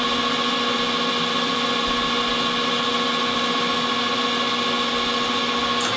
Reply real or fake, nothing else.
real